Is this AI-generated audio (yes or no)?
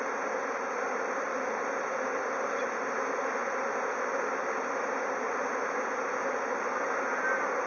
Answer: no